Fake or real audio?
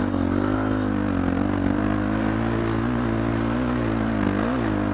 real